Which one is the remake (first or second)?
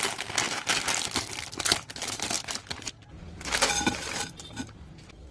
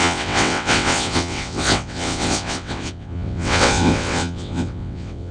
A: second